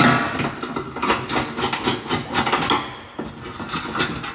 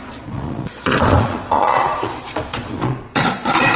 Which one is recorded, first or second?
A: first